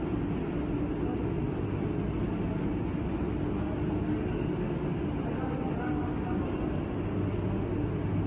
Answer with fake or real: real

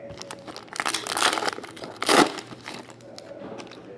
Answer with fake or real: real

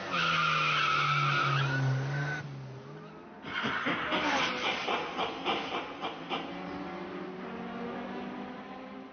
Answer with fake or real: real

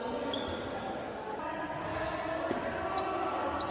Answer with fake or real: real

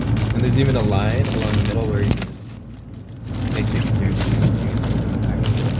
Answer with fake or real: real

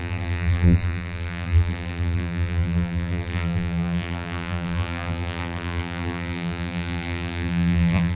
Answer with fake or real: fake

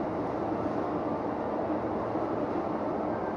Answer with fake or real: real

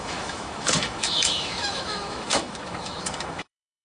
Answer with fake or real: fake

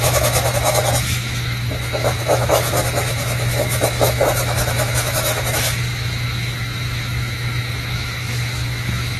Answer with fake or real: fake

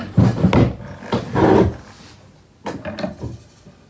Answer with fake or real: real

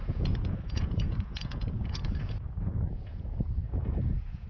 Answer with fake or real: fake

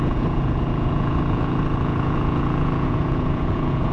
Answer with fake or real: fake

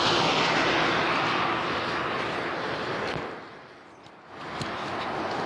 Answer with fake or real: real